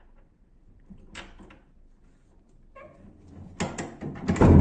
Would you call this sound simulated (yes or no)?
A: no